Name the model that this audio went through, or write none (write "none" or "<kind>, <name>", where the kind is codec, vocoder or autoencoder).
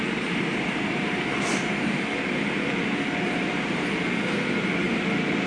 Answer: vocoder, BigVGAN v2